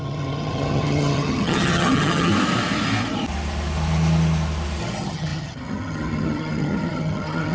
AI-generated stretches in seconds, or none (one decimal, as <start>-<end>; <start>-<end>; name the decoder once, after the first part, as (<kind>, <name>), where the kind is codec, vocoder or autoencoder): 0.0-2.3 (vocoder, HiFi-GAN); 4.8-7.5